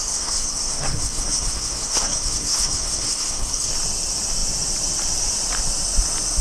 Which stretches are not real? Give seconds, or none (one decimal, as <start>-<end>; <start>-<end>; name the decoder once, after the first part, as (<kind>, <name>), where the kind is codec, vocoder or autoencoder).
0.0-3.7 (codec, SNAC)